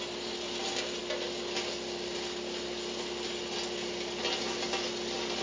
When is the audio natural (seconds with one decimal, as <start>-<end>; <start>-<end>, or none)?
0.0-5.4